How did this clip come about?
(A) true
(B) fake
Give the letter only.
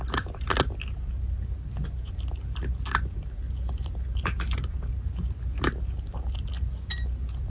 A